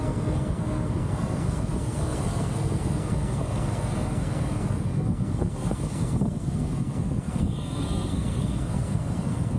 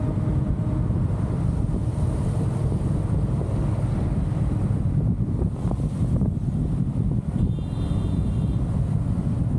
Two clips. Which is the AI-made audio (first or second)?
first